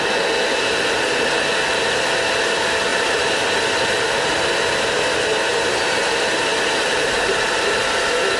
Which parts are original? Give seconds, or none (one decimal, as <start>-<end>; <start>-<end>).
0.0-2.9; 3.6-5.5